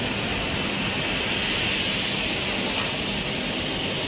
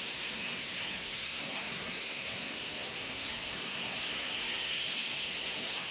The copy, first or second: second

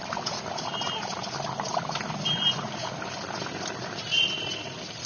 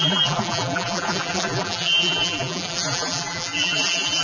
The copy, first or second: second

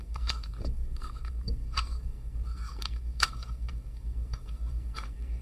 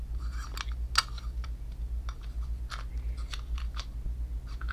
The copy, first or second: first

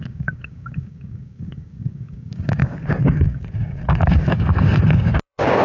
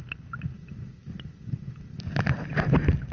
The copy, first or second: first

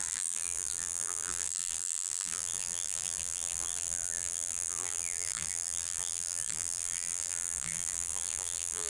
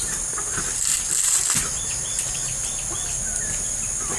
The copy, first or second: first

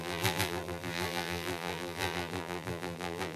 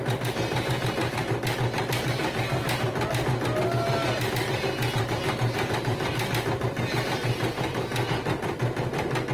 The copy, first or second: first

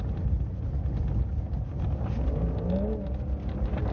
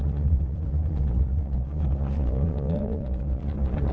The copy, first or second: second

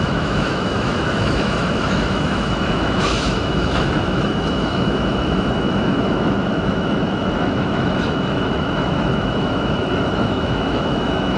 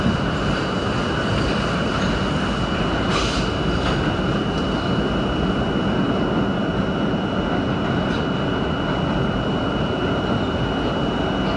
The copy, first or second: first